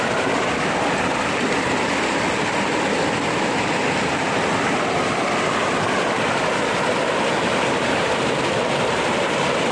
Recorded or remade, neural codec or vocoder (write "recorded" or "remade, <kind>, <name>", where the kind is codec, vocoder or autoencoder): recorded